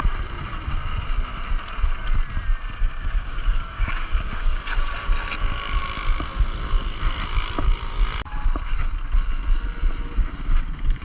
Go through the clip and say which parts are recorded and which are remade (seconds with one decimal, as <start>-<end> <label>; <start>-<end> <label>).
0.0-2.9 recorded; 2.9-4.6 remade; 4.6-11.0 recorded